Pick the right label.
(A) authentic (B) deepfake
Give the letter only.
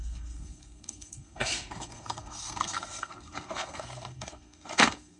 B